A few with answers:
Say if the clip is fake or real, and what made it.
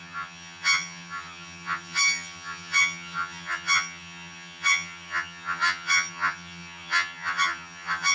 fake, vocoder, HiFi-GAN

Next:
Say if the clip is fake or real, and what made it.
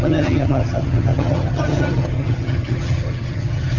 fake, vocoder, HiFi-GAN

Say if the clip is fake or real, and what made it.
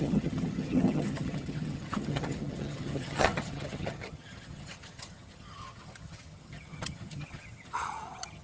fake, vocoder, HiFi-GAN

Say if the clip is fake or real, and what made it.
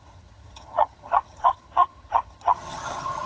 fake, vocoder, HiFi-GAN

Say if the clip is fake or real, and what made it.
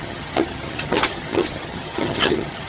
fake, vocoder, HiFi-GAN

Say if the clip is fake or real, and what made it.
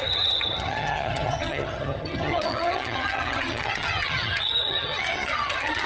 fake, vocoder, HiFi-GAN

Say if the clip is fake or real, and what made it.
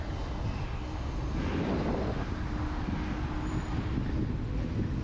real